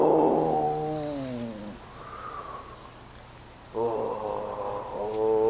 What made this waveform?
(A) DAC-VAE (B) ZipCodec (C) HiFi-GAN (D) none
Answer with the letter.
D